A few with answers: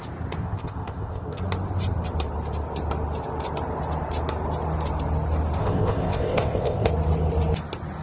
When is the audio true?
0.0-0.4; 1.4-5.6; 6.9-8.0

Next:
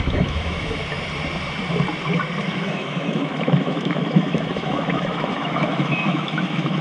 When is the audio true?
0.8-2.4

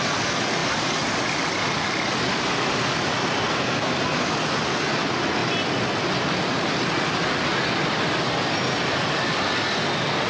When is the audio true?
0.0-10.3

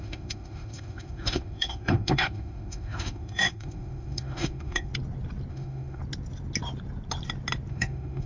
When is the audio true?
4.9-5.5; 6.0-7.7

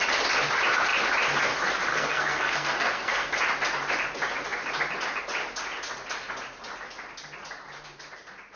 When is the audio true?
0.0-1.9; 3.3-8.6

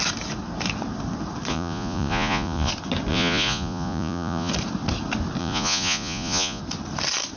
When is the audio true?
0.0-1.5; 2.7-3.1; 4.5-5.4; 6.6-7.4